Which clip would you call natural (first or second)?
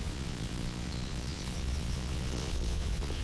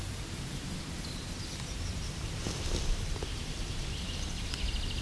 second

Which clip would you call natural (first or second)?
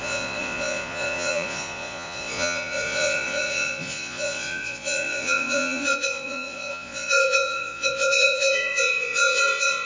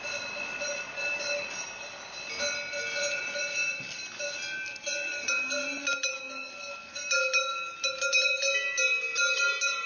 second